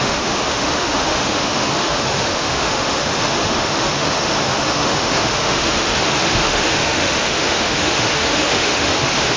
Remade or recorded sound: remade